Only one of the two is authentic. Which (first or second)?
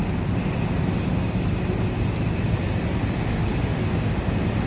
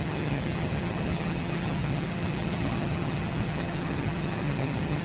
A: first